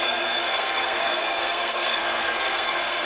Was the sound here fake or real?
fake